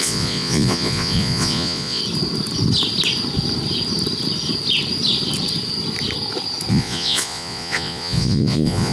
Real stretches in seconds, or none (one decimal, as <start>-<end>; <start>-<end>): 2.0-6.7